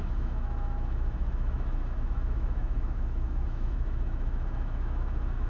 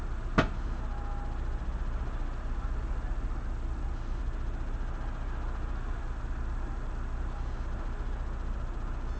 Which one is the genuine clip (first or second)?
second